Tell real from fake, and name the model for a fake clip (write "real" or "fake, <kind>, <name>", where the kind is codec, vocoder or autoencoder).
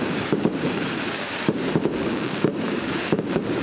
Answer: fake, codec, DAC